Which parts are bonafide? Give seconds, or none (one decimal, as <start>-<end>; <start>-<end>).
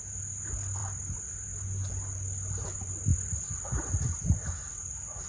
0.0-5.3